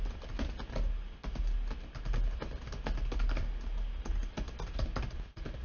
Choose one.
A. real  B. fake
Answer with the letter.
A